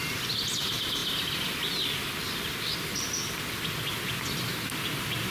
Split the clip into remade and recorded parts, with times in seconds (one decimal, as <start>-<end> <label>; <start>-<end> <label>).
0.0-5.3 recorded